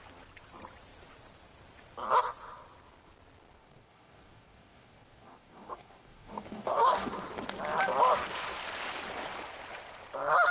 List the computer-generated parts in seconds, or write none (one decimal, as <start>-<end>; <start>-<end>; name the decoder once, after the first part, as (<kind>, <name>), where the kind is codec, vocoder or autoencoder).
3.6-7.1 (codec, DAC)